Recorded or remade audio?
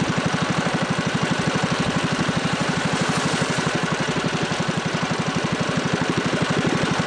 remade